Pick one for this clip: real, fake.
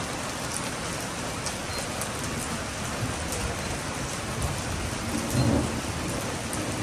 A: real